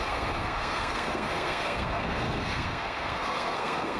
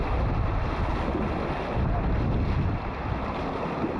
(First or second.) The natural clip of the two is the second